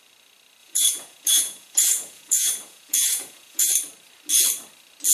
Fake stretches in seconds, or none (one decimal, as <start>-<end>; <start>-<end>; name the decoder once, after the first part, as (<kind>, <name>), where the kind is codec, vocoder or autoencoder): 0.6-3.7 (vocoder, Vocos)